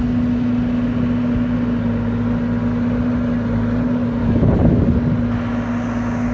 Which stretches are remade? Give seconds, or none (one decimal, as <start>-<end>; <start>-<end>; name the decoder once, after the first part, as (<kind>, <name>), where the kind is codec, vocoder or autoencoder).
4.2-4.9 (codec, DAC)